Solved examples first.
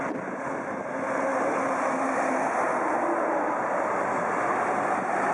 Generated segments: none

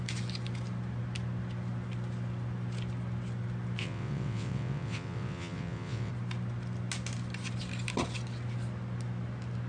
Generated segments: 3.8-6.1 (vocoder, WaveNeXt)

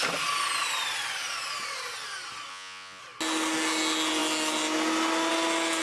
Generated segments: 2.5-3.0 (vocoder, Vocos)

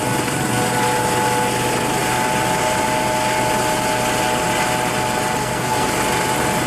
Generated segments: 5.4-5.9 (codec, SNAC)

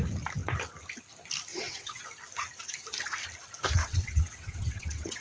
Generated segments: 1.5-2.0 (vocoder, WaveNeXt); 3.8-5.2

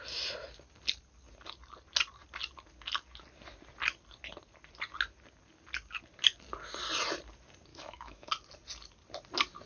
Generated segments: 7.7-8.3 (autoencoder, DAC-VAE)

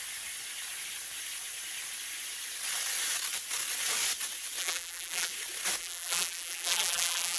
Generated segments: 4.6-5.3 (vocoder, BigVGAN v2); 5.8-7.4

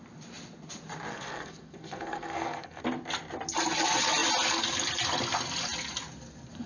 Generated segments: 1.1-2.8 (codec, SNAC)